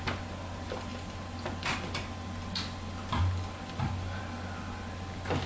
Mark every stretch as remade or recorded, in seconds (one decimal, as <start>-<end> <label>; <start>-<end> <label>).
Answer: 0.0-5.5 recorded